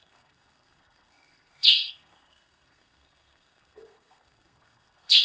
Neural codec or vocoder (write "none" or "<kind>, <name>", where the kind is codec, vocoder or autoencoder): codec, SNAC